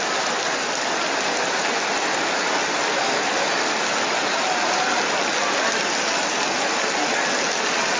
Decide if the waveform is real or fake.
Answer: real